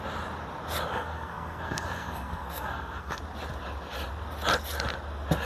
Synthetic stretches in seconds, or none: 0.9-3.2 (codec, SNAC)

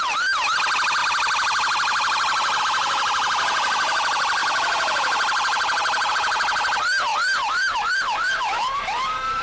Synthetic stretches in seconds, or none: 0.0-1.0 (vocoder, BigVGAN v2); 2.6-9.4

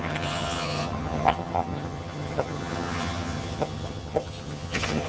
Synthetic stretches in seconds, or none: 0.0-5.1 (vocoder, HiFi-GAN)

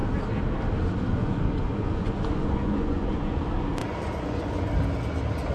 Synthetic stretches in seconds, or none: 1.1-3.4 (vocoder, Vocos); 3.8-4.7

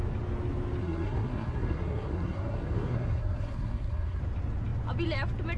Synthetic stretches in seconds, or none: 0.8-4.2 (codec, SNAC)

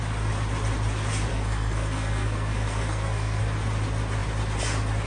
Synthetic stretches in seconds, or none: 1.3-3.4 (codec, SNAC)

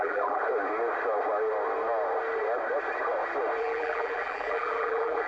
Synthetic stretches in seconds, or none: 0.0-0.4 (vocoder, BigVGAN v2); 3.6-5.3